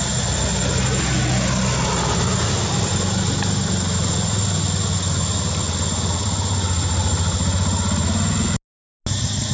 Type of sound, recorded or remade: recorded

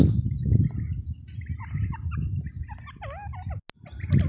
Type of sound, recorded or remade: recorded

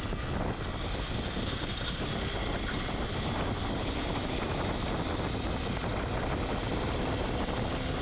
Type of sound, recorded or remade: recorded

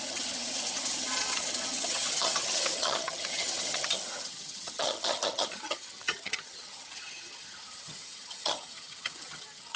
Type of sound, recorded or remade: remade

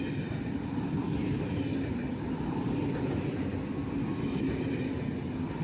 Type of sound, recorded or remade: recorded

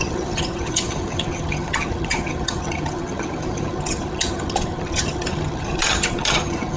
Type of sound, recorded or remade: remade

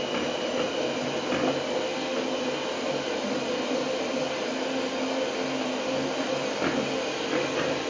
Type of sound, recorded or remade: recorded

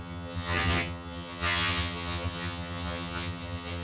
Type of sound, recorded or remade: remade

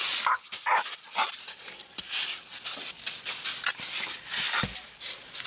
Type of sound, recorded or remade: recorded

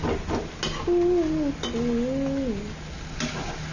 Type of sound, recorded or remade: recorded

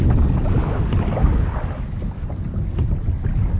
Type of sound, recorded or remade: recorded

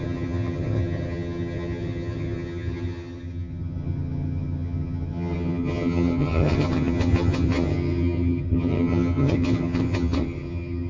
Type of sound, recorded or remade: remade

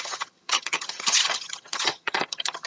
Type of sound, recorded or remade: remade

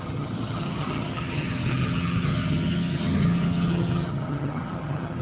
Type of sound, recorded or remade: remade